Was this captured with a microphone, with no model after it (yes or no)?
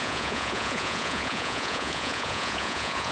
no